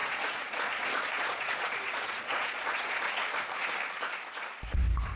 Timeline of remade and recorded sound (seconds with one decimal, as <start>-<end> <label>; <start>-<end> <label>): 0.0-3.1 remade; 3.1-5.2 recorded